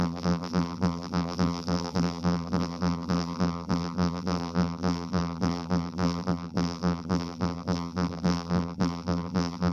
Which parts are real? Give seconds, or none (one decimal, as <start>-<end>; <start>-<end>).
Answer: none